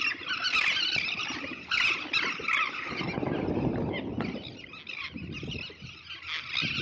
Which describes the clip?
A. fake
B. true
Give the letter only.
B